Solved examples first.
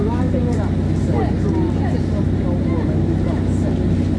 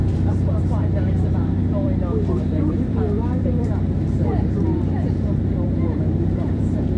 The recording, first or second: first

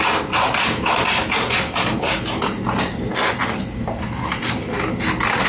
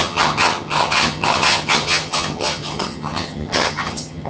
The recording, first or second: first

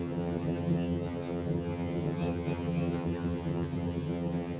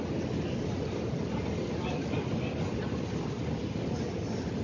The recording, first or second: second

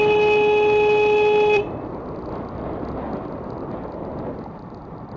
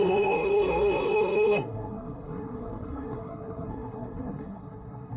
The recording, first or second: first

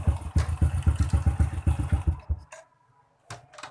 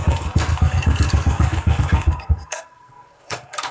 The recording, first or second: first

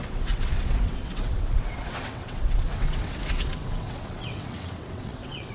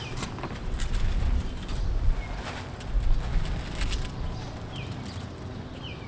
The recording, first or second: second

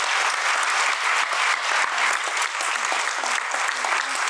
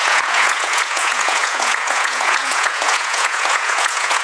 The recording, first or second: first